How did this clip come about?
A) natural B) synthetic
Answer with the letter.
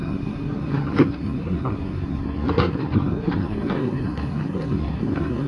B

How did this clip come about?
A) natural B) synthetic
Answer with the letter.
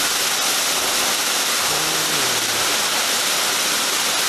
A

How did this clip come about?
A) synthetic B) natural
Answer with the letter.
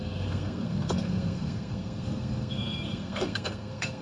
A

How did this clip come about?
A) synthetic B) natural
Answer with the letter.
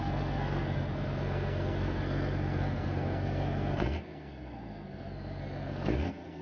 A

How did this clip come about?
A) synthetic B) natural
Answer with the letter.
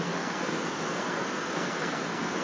A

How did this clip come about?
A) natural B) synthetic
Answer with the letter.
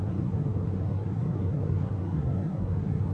B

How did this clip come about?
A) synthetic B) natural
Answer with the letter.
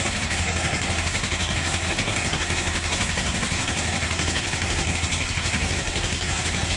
A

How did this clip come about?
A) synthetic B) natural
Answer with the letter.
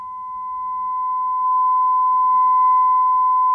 B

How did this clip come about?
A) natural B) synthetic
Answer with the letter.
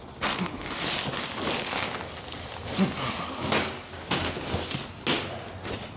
A